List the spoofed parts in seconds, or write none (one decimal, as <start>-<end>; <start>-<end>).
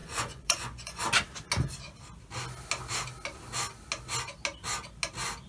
0.0-1.0